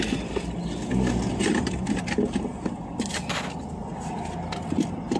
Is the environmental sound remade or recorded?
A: recorded